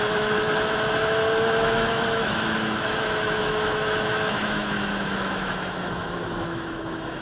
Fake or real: fake